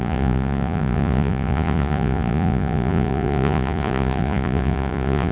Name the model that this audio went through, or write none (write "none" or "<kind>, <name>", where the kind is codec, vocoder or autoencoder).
vocoder, Vocos